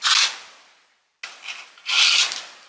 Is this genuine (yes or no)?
yes